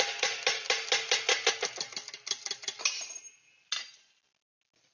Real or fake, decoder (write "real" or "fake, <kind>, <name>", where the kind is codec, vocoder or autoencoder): real